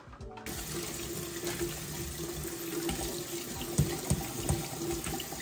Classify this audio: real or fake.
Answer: real